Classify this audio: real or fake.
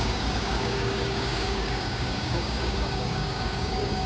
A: fake